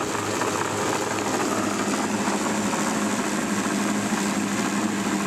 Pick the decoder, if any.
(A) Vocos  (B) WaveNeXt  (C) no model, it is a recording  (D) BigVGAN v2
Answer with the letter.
C